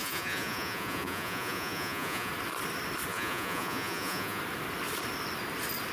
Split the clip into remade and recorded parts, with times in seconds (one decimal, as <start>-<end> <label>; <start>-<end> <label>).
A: 0.0-2.3 remade; 2.3-3.1 recorded; 3.1-4.4 remade; 4.4-5.9 recorded